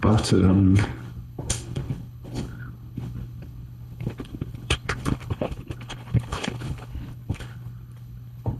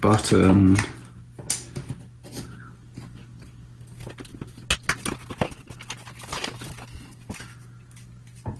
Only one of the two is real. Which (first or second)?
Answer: second